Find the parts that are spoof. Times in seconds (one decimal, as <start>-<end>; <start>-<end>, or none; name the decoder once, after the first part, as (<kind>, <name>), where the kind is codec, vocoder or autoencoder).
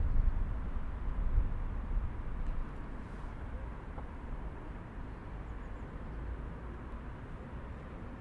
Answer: 0.0-5.2 (vocoder, BigVGAN v2); 7.6-8.2